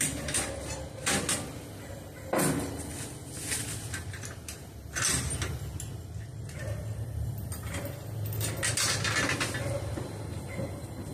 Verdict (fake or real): real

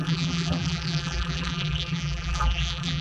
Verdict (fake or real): fake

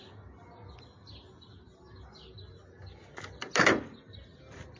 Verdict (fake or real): real